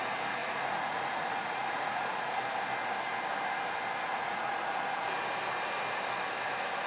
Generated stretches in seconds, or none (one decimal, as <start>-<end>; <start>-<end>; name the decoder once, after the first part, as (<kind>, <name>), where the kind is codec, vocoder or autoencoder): 0.4-2.4 (vocoder, Vocos); 4.1-4.7